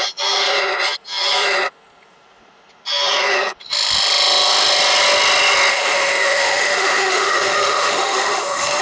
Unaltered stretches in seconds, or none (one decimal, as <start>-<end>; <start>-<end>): 0.0-5.7